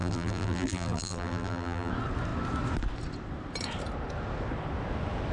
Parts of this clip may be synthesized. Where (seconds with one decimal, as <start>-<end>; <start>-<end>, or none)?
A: 0.0-1.9